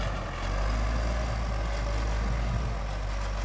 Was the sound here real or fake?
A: real